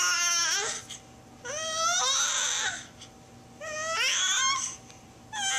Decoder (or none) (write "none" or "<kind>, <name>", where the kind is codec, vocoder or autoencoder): none